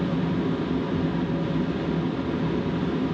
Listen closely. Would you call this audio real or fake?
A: real